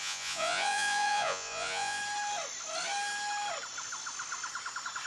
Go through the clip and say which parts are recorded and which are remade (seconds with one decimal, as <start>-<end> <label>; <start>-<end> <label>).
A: 0.0-2.0 remade; 2.0-5.1 recorded